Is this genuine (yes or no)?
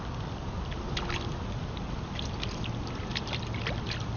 yes